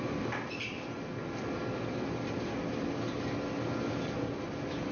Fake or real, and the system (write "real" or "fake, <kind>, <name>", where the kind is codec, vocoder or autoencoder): real